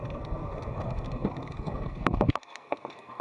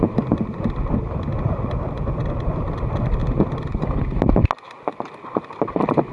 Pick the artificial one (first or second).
first